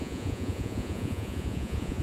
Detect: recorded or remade remade